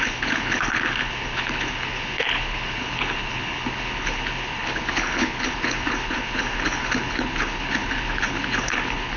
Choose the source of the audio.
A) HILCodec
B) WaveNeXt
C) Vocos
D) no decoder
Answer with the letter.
A